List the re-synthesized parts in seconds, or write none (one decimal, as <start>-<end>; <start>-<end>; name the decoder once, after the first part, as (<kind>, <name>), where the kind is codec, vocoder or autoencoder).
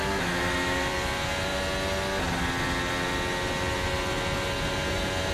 0.0-0.9 (autoencoder, DAC-VAE)